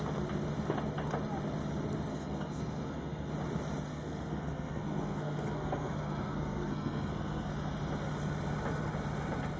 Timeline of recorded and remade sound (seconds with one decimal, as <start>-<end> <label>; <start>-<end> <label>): 0.0-2.1 recorded; 2.1-3.3 remade; 3.3-3.9 recorded; 3.9-7.5 remade; 7.5-9.6 recorded